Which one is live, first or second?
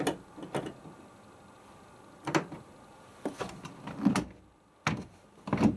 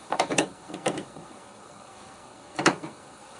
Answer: first